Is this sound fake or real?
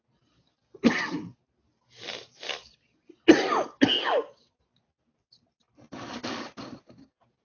real